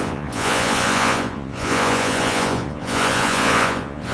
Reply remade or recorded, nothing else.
remade